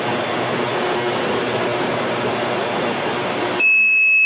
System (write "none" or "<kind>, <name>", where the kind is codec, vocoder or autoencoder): none